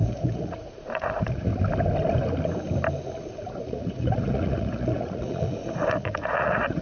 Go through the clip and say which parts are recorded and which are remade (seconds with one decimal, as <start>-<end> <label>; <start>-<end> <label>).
0.0-1.5 remade; 1.5-3.2 recorded; 3.2-6.8 remade